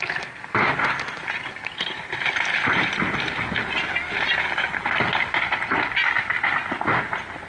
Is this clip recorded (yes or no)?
yes